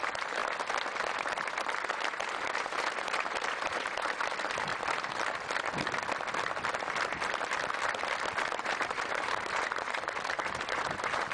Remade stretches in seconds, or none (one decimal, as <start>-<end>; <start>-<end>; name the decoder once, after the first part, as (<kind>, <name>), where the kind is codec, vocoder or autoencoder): 0.0-0.4 (vocoder, BigVGAN v2); 1.1-4.7; 8.4-11.3